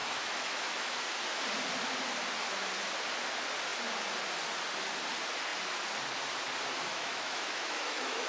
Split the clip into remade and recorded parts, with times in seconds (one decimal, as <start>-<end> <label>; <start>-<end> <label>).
0.0-1.0 remade; 1.0-6.9 recorded; 6.9-8.3 remade

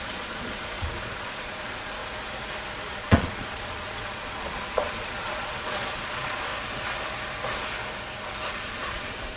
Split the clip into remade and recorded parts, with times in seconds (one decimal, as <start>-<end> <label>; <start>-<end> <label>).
0.0-2.0 remade; 2.0-2.9 recorded; 2.9-6.5 remade; 6.5-8.5 recorded; 8.5-9.4 remade

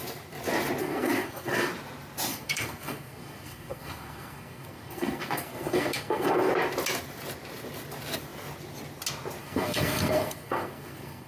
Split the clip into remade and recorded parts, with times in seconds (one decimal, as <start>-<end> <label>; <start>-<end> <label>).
0.0-0.8 recorded; 0.8-1.7 remade; 1.7-2.3 recorded; 2.3-6.5 remade; 6.5-9.4 recorded; 9.4-11.3 remade

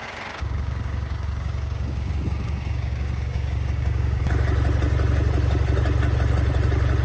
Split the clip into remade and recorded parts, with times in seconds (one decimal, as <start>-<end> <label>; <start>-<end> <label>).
0.0-4.2 remade; 4.2-7.0 recorded

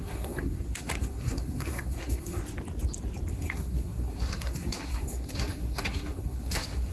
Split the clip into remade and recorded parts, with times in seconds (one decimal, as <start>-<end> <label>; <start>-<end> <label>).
0.0-2.4 remade; 2.4-3.3 recorded; 3.3-6.9 remade

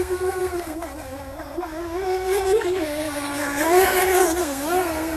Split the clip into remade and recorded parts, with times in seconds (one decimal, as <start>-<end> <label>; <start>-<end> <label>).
0.0-5.2 remade

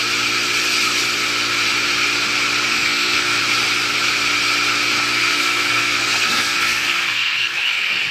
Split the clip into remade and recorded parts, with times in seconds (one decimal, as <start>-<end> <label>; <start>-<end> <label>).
0.0-2.7 recorded; 2.7-3.4 remade; 3.4-5.1 recorded; 5.1-8.1 remade